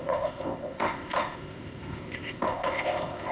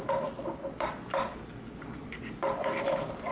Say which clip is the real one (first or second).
second